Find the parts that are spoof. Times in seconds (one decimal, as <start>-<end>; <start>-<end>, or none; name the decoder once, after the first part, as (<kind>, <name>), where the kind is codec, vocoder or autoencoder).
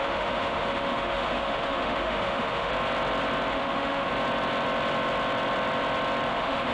0.0-2.7 (autoencoder, DAC-VAE); 3.5-4.1; 6.3-6.7